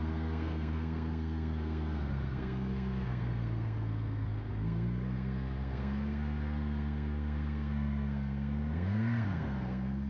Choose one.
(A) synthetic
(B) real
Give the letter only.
A